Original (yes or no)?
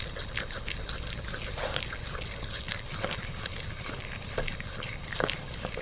yes